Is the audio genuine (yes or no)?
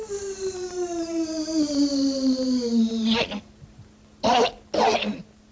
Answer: yes